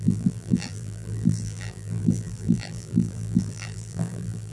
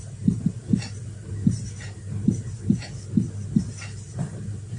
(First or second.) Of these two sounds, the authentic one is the second